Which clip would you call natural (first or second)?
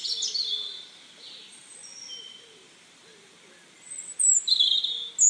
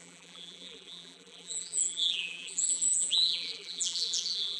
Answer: first